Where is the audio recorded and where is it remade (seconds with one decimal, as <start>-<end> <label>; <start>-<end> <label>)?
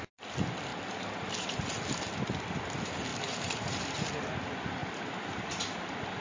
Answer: 0.0-0.7 recorded; 0.7-1.7 remade; 1.7-3.1 recorded; 3.1-4.3 remade; 4.3-4.8 recorded; 4.8-5.6 remade; 5.6-6.2 recorded